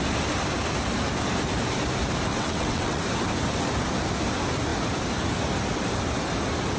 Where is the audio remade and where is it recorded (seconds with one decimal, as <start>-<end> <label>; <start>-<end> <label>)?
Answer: 0.0-2.3 recorded; 2.3-3.0 remade; 3.0-6.8 recorded